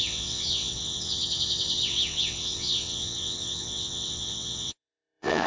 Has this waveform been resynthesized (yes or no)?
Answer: yes